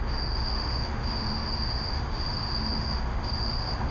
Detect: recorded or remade remade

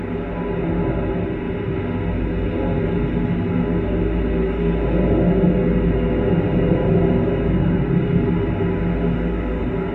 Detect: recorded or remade recorded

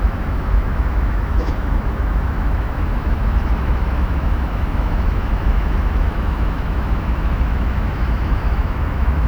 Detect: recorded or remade remade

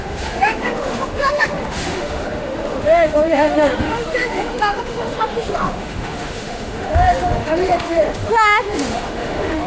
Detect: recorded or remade remade